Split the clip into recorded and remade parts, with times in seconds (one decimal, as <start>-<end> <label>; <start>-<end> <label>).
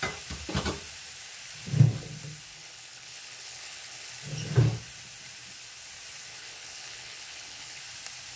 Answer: 0.0-2.5 recorded; 2.5-4.1 remade; 4.1-6.3 recorded; 6.3-7.8 remade; 7.8-8.4 recorded